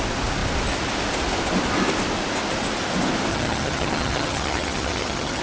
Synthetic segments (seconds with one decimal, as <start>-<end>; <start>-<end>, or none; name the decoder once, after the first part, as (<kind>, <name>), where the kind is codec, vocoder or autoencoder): 3.3-5.4 (vocoder, HiFi-GAN)